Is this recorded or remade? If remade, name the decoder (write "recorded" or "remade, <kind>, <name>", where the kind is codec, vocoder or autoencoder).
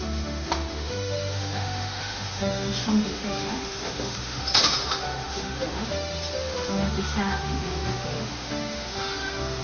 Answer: remade, autoencoder, DAC-VAE